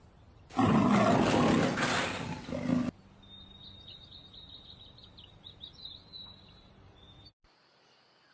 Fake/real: real